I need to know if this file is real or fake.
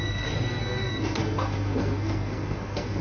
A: fake